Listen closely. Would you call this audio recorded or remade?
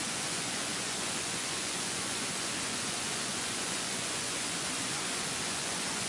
remade